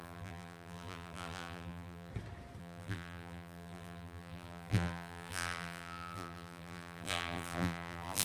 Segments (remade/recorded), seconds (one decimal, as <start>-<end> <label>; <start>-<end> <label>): 0.0-2.1 remade; 2.1-2.6 recorded; 2.6-8.2 remade